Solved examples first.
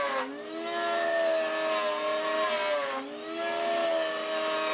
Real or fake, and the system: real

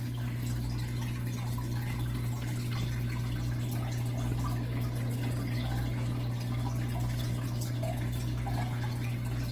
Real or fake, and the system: real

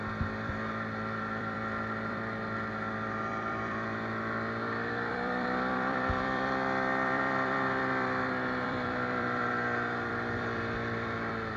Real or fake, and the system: fake, vocoder, BigVGAN v2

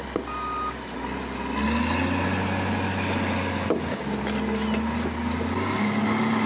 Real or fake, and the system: real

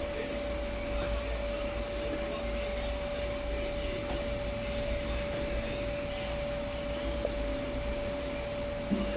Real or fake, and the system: real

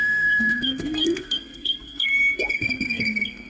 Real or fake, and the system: fake, codec, SNAC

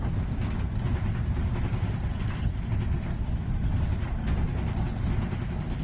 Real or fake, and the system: real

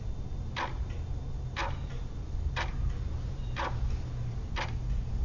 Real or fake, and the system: real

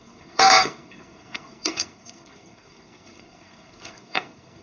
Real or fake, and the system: fake, codec, SNAC